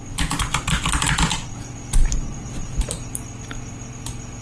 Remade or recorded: recorded